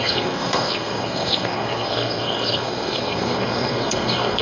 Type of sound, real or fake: fake